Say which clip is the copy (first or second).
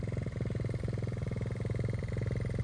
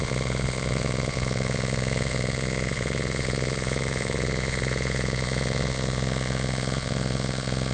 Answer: second